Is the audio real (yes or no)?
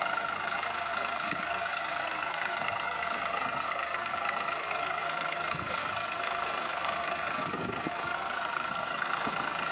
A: no